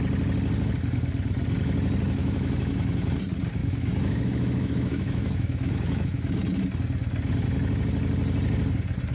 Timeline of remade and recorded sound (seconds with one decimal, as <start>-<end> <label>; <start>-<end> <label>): 0.0-2.2 recorded; 2.2-3.2 remade; 3.2-3.6 recorded; 3.6-6.6 remade; 6.6-9.1 recorded